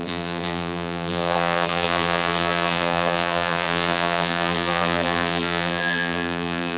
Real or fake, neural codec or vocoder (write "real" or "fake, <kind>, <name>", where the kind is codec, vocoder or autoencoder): fake, vocoder, BigVGAN v2